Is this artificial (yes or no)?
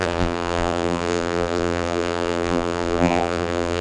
yes